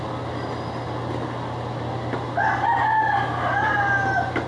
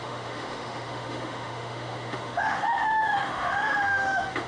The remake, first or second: second